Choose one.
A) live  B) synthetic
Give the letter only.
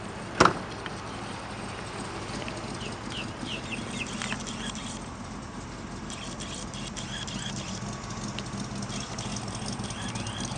A